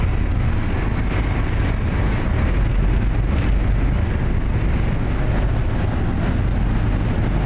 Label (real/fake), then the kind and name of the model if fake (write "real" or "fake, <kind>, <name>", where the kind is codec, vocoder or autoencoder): real